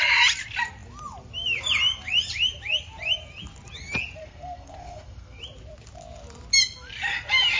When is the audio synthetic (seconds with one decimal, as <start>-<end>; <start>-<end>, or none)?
4.2-5.4

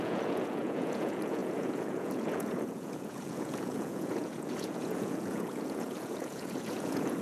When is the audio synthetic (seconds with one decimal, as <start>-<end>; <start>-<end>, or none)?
0.0-7.2

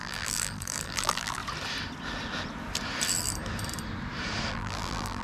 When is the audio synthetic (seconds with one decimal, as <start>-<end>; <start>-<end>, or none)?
0.0-1.4; 4.5-5.2

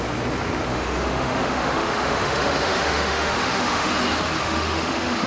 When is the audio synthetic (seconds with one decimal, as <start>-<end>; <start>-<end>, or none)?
0.7-3.9; 4.4-5.3

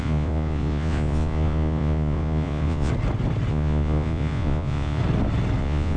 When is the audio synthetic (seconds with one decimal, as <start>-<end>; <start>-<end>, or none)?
0.0-2.9; 3.5-5.0; 5.6-6.0

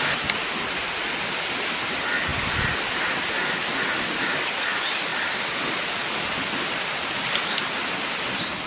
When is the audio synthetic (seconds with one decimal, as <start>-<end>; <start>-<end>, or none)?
none

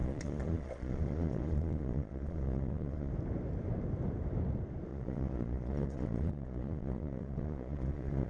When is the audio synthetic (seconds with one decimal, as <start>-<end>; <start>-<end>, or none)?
0.0-3.1; 4.9-8.3